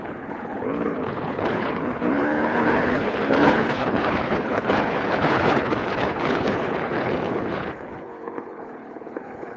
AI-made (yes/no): yes